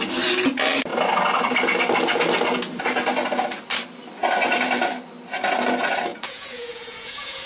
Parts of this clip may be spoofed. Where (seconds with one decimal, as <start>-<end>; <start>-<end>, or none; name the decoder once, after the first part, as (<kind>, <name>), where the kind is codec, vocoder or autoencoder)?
6.1-7.5 (vocoder, Vocos)